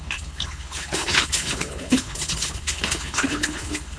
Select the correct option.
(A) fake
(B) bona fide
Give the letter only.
A